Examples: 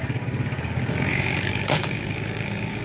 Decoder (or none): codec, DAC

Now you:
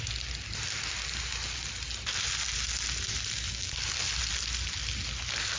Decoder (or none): none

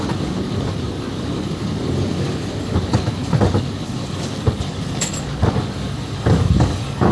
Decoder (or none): codec, DAC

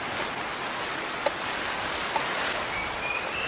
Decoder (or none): none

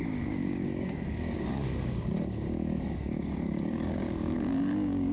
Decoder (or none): codec, DAC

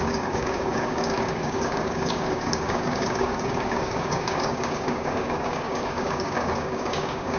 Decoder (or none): codec, DAC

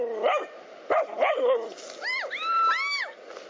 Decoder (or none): none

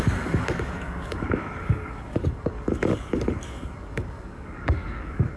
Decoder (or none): codec, DAC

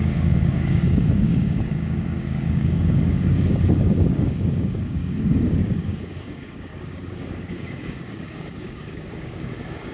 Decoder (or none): codec, DAC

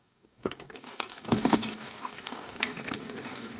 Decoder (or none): codec, DAC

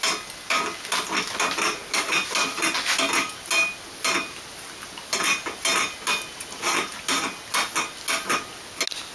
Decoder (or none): none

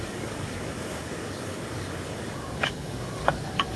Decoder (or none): codec, DAC